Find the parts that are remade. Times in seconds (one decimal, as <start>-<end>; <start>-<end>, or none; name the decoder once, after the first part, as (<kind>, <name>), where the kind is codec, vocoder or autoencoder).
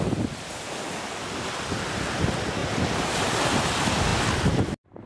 2.6-3.3 (vocoder, BigVGAN v2)